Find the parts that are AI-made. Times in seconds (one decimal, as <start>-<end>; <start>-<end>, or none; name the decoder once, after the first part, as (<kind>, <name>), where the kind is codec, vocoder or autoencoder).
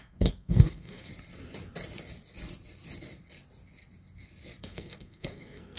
0.0-1.1 (codec, SNAC); 4.6-5.8